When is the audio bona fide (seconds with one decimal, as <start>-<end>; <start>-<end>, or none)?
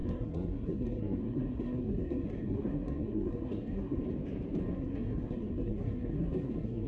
4.0-4.7